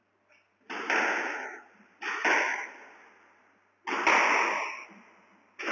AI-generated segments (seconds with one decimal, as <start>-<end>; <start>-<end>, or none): none